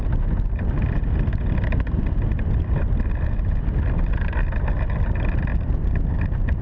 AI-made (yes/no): no